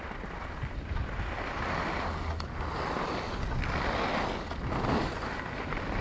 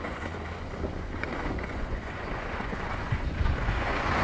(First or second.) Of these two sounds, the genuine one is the first